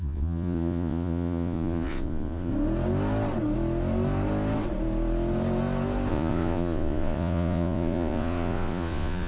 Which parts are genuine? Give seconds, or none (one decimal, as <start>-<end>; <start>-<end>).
2.5-6.1